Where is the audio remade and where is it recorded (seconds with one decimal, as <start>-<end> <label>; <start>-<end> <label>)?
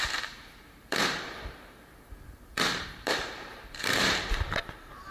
0.0-5.1 remade